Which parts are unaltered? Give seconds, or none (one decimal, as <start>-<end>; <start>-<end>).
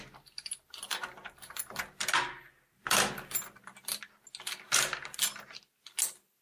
0.0-6.4